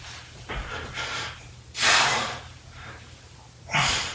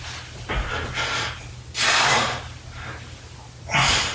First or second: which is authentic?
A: second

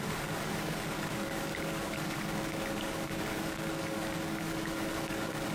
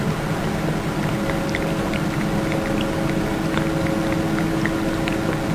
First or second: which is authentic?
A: second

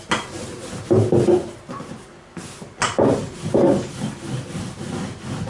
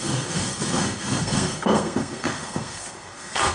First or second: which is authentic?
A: first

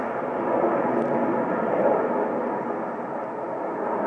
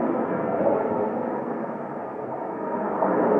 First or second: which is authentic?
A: first